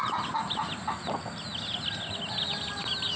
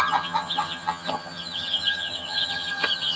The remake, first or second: second